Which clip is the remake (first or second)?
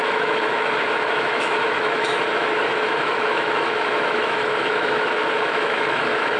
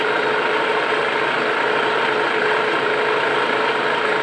first